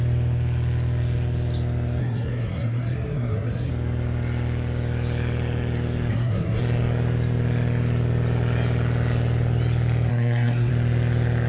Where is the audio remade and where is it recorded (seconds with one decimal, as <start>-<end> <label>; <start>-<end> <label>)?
0.0-2.0 recorded; 2.0-3.7 remade; 3.7-6.1 recorded; 6.1-6.6 remade; 6.6-10.1 recorded; 10.1-10.7 remade; 10.7-11.5 recorded